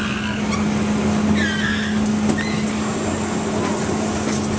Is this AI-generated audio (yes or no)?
no